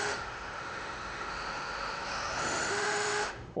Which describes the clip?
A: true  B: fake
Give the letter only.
B